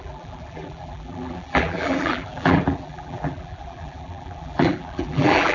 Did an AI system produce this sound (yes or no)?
yes